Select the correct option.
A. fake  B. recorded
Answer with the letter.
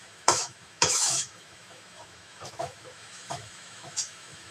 A